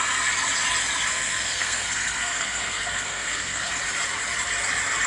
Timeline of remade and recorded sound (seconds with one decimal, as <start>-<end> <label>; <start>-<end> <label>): 0.0-1.1 recorded; 1.1-3.7 remade; 3.7-5.1 recorded